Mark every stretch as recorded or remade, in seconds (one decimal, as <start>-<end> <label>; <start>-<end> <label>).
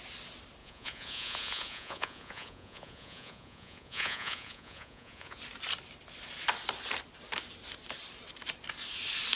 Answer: 0.0-0.6 recorded; 0.6-5.4 remade; 5.4-9.4 recorded